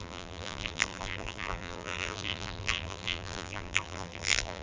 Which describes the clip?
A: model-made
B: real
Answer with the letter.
A